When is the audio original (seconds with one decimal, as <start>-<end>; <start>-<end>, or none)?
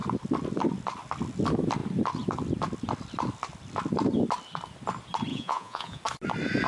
0.0-5.3; 6.0-6.7